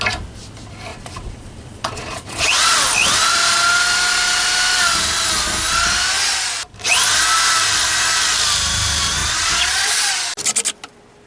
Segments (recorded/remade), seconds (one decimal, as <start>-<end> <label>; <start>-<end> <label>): 0.0-0.9 recorded; 0.9-2.6 remade; 2.6-9.2 recorded; 9.2-10.1 remade; 10.1-11.3 recorded